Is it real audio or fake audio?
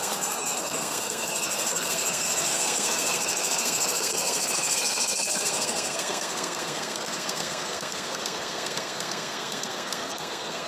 fake